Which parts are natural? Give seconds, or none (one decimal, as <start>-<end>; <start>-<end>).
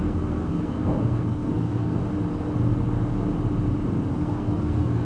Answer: 2.0-4.1